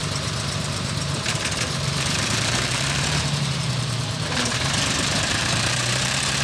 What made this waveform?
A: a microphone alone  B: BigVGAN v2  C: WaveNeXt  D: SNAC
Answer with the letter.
B